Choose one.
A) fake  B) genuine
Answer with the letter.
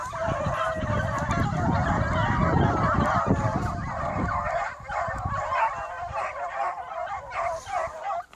B